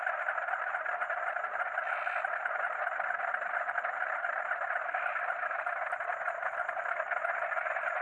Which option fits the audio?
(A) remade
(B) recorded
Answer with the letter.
B